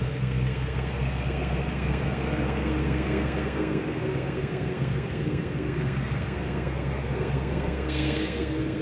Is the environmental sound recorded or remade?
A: remade